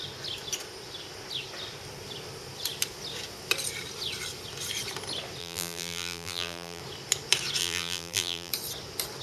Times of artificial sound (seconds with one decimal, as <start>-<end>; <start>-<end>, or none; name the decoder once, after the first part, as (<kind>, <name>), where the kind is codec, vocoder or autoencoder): 5.4-6.8 (vocoder, BigVGAN v2); 7.6-8.5